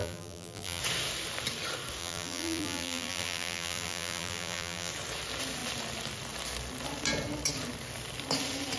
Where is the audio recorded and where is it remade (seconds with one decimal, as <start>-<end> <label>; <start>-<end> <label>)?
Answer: 0.0-0.8 remade; 0.8-2.0 recorded; 2.0-4.9 remade; 4.9-8.8 recorded